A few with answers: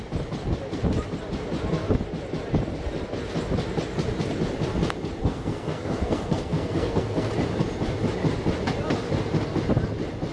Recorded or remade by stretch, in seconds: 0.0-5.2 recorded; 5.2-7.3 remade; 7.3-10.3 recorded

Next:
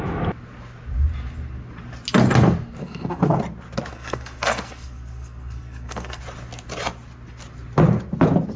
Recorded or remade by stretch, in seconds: 0.0-2.8 recorded; 2.8-3.4 remade; 3.4-3.9 recorded; 3.9-6.2 remade; 6.2-8.6 recorded

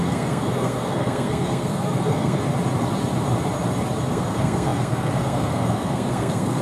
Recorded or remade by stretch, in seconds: 0.0-2.4 remade; 2.4-4.1 recorded; 4.1-6.6 remade